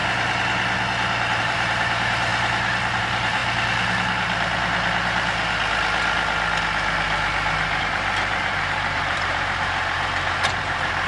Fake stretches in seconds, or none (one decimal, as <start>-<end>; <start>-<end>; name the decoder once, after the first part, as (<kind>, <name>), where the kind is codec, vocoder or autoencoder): 1.4-2.3 (vocoder, BigVGAN v2); 3.0-3.4; 7.8-11.1